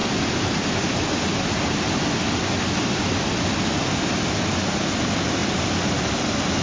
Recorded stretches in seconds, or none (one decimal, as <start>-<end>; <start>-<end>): 0.0-6.6